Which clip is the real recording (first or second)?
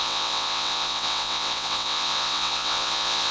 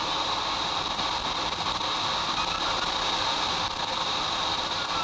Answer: second